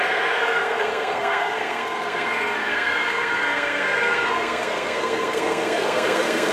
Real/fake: fake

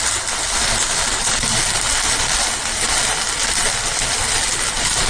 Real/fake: real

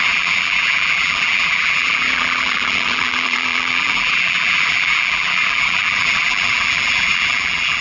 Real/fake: fake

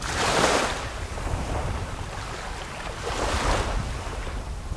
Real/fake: real